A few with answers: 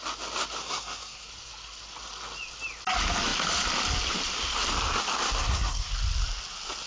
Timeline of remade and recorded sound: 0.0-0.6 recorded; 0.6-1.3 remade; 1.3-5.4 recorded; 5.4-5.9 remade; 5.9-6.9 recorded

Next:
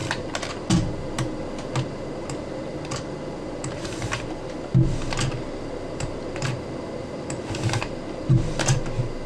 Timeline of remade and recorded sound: 0.0-9.3 recorded

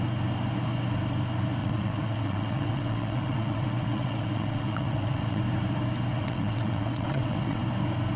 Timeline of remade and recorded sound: 0.0-1.6 recorded; 1.6-5.4 remade; 5.4-6.1 recorded; 6.1-7.6 remade; 7.6-8.2 recorded

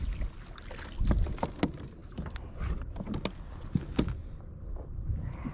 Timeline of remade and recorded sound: 0.0-5.5 recorded

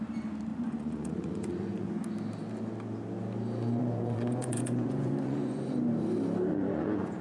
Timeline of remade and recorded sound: 0.0-0.5 recorded; 0.5-1.9 remade; 1.9-3.8 recorded; 3.8-5.6 remade; 5.6-6.5 recorded; 6.5-7.2 remade

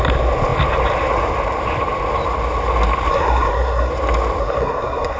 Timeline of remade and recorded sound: 0.0-3.1 recorded; 3.1-3.9 remade; 3.9-4.4 recorded; 4.4-5.2 remade

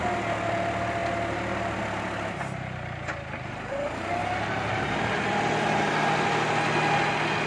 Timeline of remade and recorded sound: 0.0-7.5 recorded